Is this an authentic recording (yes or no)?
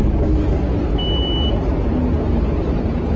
yes